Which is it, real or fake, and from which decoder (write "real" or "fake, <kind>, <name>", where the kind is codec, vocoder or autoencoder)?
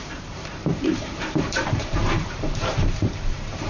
fake, vocoder, BigVGAN v2